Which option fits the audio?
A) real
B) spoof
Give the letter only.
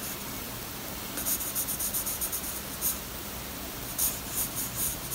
A